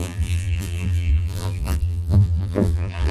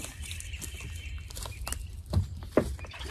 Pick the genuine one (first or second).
second